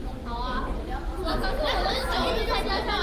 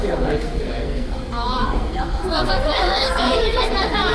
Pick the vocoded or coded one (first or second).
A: second